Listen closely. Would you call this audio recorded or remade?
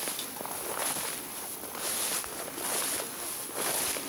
recorded